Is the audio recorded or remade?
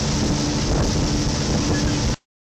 recorded